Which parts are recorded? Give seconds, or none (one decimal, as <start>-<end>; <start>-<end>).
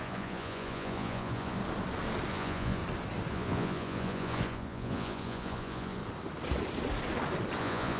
1.6-2.3; 2.8-3.3; 6.0-7.6